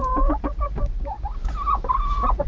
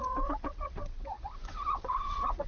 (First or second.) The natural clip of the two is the first